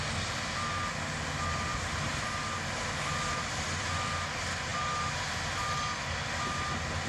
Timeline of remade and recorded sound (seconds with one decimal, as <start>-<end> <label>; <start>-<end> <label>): 0.0-1.7 recorded; 1.7-2.2 remade; 2.2-7.1 recorded